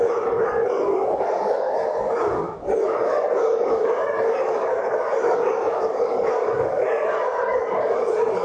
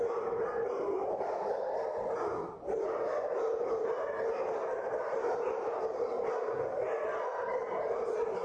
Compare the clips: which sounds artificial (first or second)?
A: first